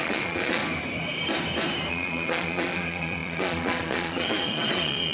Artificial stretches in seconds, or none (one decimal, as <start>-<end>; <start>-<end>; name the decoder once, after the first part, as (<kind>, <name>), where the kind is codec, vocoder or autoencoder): 0.0-0.6 (vocoder, Vocos); 1.9-5.1